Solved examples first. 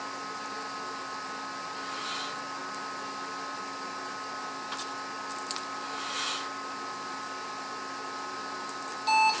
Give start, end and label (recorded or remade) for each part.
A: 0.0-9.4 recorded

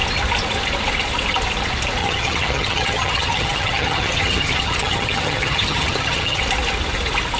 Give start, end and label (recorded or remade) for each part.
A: 0.0-2.0 recorded; 2.0-6.4 remade; 6.4-7.4 recorded